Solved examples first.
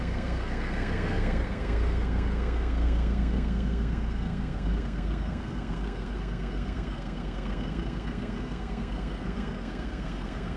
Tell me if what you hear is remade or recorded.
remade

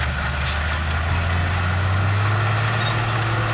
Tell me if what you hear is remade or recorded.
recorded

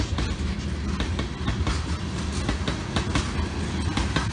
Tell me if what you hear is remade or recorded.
recorded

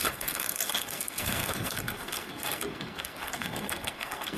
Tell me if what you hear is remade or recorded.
remade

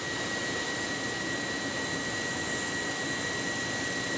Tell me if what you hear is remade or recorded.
recorded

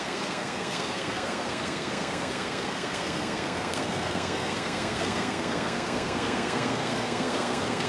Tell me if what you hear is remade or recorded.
remade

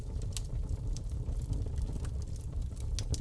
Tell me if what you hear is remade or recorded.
recorded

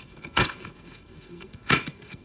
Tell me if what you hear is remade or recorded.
remade